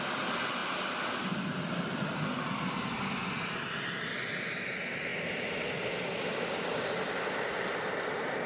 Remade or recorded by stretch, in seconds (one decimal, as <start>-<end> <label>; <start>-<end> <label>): 0.0-8.5 recorded